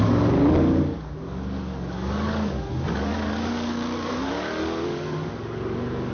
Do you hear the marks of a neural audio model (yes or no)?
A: yes